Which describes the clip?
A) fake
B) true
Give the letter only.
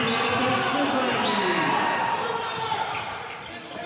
B